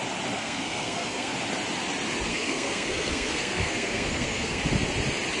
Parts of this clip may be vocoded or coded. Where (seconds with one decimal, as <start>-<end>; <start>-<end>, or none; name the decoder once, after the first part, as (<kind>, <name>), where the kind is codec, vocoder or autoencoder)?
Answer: 0.4-1.3 (codec, SNAC); 2.3-4.6